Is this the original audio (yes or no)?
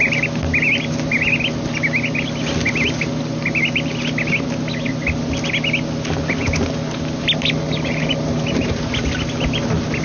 yes